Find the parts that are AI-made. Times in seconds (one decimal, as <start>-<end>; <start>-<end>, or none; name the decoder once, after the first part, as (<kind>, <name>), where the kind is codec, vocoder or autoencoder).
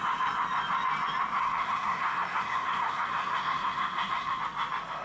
1.4-4.4 (codec, SNAC)